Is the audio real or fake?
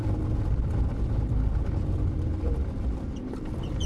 fake